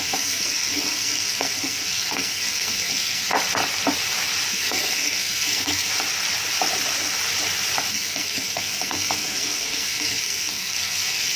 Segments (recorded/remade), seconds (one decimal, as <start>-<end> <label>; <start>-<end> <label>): 0.0-3.3 remade; 3.3-4.5 recorded; 4.5-5.9 remade; 5.9-7.9 recorded; 7.9-11.4 remade